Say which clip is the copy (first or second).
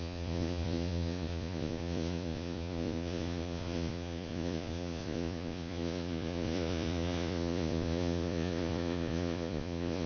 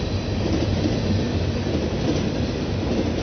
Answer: first